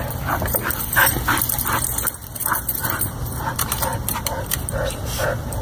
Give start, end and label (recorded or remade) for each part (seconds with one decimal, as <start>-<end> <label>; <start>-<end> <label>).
0.0-5.6 remade